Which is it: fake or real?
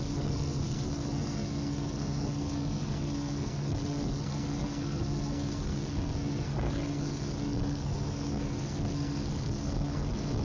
fake